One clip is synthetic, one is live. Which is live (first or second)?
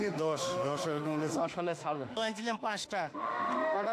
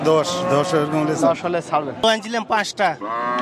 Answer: second